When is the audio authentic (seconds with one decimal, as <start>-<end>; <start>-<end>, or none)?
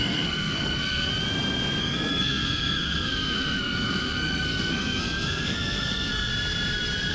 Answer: 1.1-1.8; 6.3-7.1